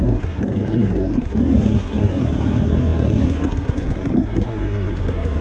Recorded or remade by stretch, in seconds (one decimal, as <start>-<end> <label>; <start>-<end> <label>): 0.0-5.4 remade